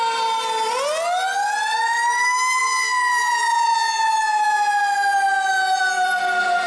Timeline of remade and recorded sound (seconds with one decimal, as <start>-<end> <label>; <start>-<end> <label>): 0.0-6.7 recorded